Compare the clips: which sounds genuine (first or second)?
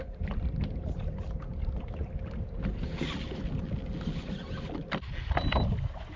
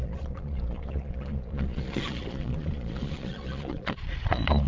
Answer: first